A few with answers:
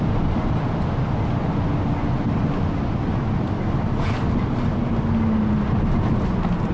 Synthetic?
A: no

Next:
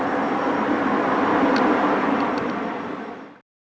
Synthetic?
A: no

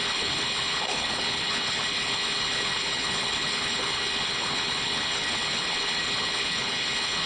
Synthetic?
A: yes